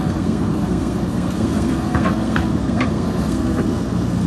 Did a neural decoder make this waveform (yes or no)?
yes